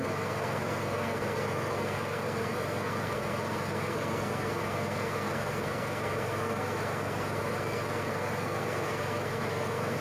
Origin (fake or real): fake